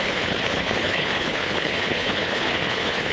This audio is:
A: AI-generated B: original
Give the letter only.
A